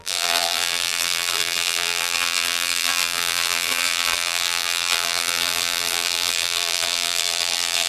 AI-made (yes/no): yes